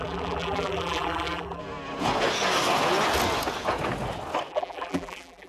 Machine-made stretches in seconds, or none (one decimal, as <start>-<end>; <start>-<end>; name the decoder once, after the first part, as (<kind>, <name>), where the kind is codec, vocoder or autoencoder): 0.0-1.6 (vocoder, BigVGAN v2); 4.5-5.5